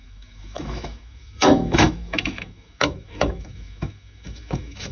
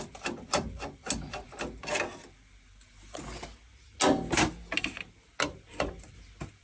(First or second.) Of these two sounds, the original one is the second